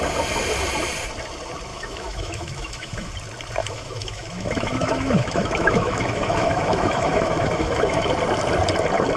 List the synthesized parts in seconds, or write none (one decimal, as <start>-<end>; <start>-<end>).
1.7-3.1; 3.6-8.1